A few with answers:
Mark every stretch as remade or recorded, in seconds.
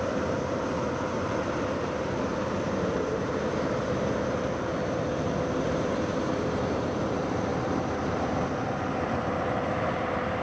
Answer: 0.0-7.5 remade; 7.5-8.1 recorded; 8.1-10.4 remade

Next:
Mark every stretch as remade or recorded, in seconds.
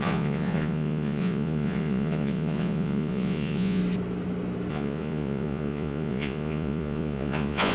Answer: 0.0-3.8 remade; 3.8-4.7 recorded; 4.7-7.7 remade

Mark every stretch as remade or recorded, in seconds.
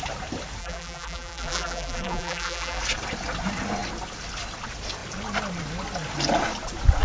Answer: 0.0-0.6 recorded; 0.6-2.8 remade; 2.8-7.0 recorded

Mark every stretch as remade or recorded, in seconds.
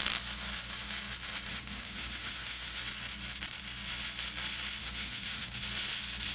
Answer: 0.0-1.5 recorded; 1.5-2.8 remade; 2.8-4.8 recorded; 4.8-5.6 remade; 5.6-6.3 recorded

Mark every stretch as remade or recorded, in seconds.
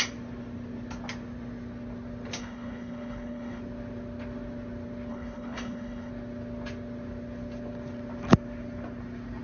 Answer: 0.0-2.4 recorded; 2.4-3.6 remade; 3.6-5.1 recorded; 5.1-6.1 remade; 6.1-9.4 recorded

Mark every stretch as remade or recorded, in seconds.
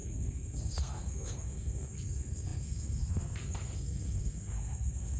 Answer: 0.0-5.2 remade